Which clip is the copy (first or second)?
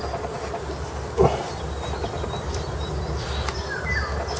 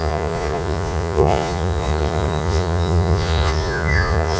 second